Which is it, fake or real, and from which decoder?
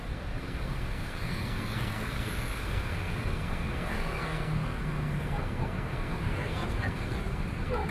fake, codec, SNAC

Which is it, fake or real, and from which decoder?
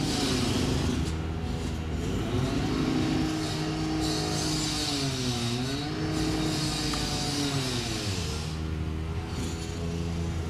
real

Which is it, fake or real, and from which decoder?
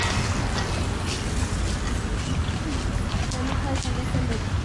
real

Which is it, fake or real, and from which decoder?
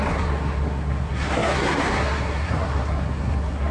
fake, codec, SNAC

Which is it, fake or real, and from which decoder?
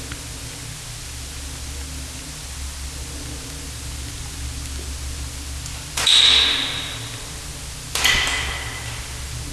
real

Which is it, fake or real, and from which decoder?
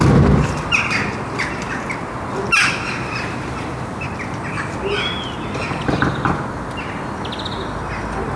real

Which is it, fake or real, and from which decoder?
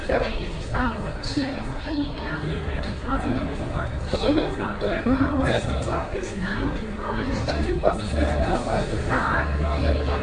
fake, codec, SNAC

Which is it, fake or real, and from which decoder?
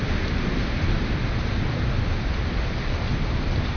real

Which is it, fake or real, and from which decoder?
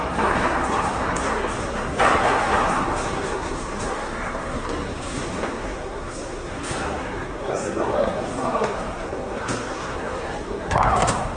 fake, codec, SNAC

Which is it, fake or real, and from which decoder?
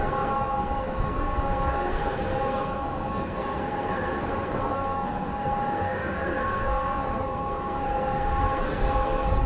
fake, codec, SNAC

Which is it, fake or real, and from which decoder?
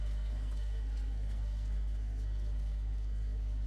fake, codec, SNAC